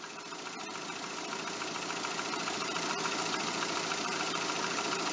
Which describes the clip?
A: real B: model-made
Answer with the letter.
A